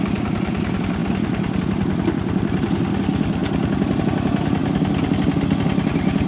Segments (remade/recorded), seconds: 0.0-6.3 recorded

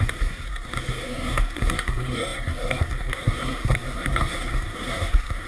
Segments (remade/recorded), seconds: 0.0-5.5 remade

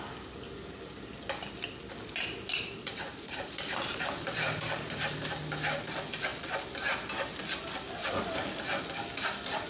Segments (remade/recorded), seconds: 0.0-2.0 recorded; 2.0-5.4 remade; 5.4-9.7 recorded

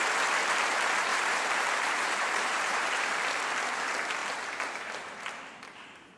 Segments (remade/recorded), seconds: 0.0-1.1 recorded; 1.1-2.9 remade; 2.9-6.2 recorded